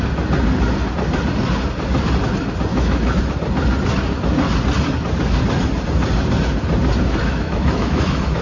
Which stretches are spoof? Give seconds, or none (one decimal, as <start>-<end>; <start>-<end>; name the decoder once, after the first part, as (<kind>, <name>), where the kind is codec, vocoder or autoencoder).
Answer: 2.7-3.2 (autoencoder, DAC-VAE); 7.2-8.4